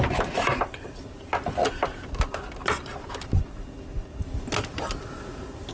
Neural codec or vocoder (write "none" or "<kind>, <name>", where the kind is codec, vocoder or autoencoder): none